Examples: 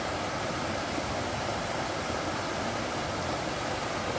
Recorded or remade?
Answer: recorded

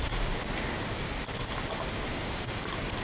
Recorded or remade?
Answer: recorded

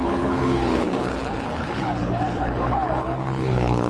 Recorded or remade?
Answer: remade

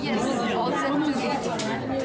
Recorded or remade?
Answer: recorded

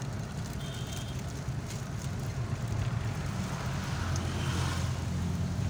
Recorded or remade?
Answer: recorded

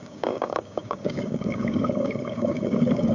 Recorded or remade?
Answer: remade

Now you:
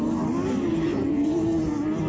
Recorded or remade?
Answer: recorded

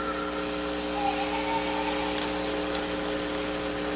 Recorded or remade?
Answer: recorded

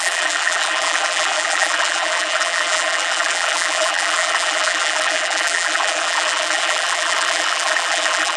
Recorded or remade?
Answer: remade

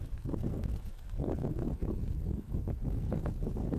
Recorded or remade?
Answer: remade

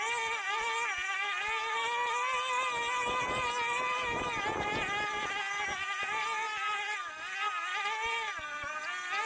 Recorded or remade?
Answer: recorded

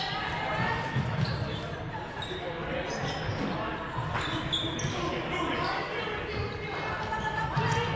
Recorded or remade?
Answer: recorded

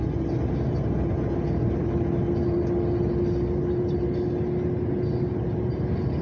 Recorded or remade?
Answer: recorded